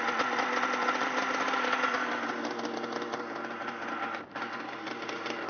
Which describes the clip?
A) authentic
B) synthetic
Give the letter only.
A